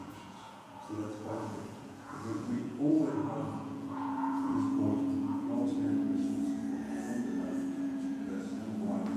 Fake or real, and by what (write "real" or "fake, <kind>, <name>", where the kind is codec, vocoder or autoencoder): fake, vocoder, Vocos